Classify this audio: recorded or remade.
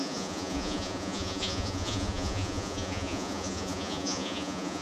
remade